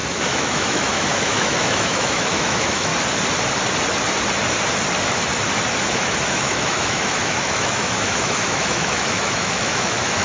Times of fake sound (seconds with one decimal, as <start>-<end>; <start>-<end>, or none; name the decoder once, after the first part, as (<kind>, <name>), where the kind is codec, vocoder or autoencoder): 0.0-2.9 (autoencoder, DAC-VAE); 6.3-10.2